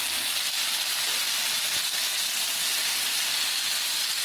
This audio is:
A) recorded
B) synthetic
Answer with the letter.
A